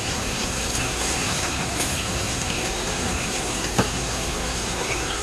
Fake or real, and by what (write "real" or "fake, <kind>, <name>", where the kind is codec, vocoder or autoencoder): fake, codec, SNAC